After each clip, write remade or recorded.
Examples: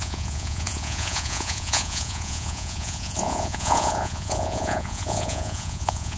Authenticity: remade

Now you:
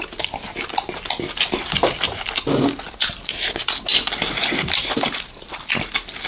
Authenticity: recorded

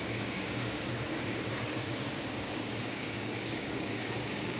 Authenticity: remade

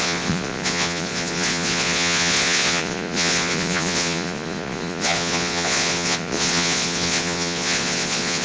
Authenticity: remade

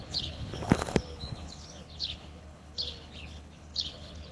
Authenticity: remade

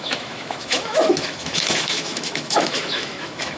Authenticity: remade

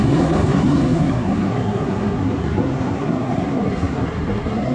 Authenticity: remade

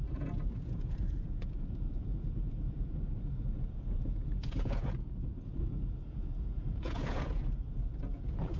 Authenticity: remade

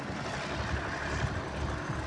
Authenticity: recorded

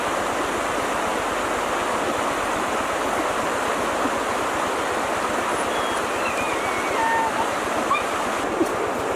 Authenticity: recorded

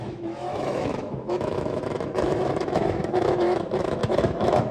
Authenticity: remade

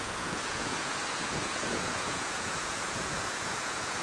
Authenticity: remade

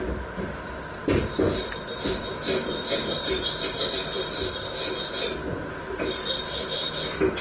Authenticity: recorded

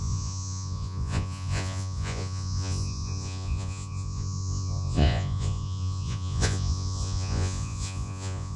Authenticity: remade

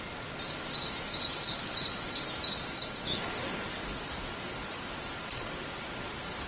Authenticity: recorded